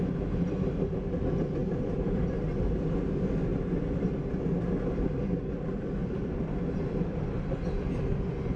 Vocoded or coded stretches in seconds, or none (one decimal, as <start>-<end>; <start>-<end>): 1.6-2.2; 3.5-4.1; 6.0-7.9